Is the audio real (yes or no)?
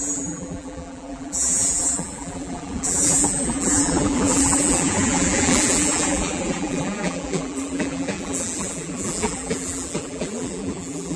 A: no